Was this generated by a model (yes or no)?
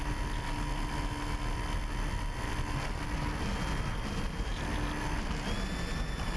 no